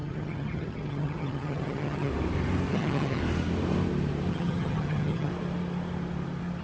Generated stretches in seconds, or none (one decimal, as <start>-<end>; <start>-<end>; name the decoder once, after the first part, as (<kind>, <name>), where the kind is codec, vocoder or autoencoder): 0.0-2.1 (vocoder, HiFi-GAN); 2.7-3.2; 4.3-5.3